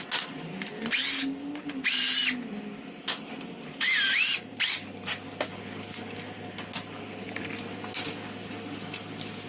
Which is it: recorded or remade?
recorded